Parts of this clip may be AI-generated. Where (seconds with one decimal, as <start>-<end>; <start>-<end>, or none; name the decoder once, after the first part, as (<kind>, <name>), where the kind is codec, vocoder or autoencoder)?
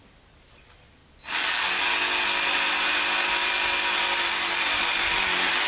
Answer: none